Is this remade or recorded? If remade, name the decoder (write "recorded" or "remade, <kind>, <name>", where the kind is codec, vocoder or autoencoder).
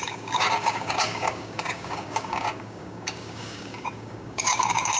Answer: remade, codec, DAC